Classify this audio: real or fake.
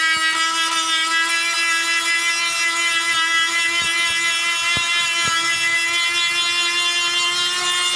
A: real